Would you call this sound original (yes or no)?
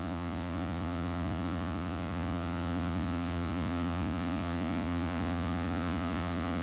no